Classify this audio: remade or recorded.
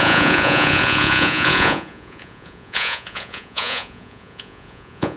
remade